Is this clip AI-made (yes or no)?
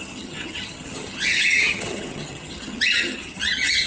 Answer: yes